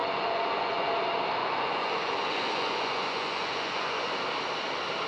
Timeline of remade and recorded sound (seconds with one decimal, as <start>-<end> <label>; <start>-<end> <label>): 0.0-0.9 remade; 0.9-1.4 recorded; 1.4-4.1 remade; 4.1-5.1 recorded